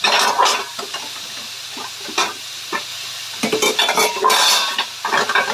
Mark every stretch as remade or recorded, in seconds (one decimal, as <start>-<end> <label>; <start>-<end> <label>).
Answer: 0.0-5.5 recorded